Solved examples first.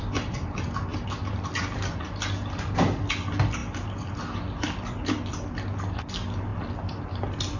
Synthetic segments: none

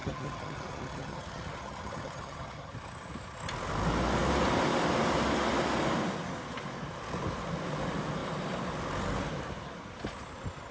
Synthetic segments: 0.0-2.7

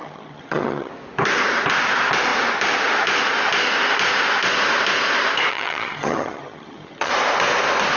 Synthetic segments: 0.0-0.9; 5.5-7.1

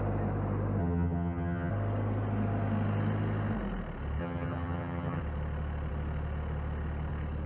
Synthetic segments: 0.8-1.7; 4.2-5.2

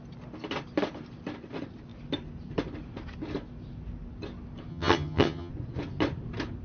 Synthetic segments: 4.7-5.5

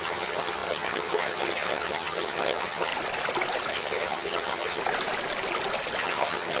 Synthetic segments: 0.0-2.9; 3.7-4.8; 6.0-6.6